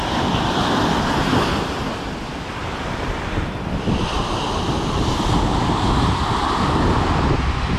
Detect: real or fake fake